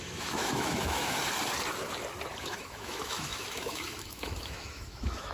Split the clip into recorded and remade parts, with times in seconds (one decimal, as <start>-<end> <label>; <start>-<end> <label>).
0.0-1.2 remade; 1.2-2.4 recorded; 2.4-5.3 remade